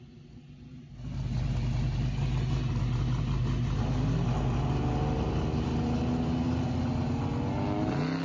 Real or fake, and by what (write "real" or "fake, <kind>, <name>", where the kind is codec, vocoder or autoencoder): real